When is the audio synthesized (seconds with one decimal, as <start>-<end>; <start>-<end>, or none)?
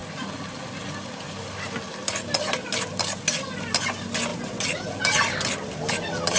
none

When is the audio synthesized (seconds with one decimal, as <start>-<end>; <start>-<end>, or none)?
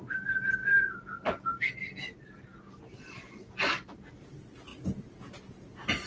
none